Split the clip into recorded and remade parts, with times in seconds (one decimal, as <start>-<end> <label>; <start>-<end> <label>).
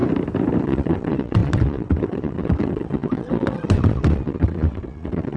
0.0-0.6 recorded; 0.6-5.4 remade